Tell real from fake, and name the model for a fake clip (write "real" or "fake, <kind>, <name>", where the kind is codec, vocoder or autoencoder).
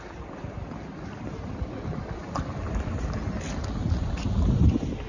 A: real